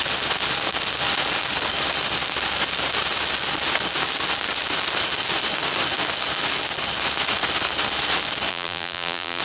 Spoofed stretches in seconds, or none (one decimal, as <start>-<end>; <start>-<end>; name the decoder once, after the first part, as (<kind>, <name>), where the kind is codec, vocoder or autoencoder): 8.5-9.4 (vocoder, BigVGAN v2)